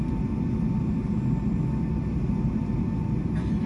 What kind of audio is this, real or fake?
real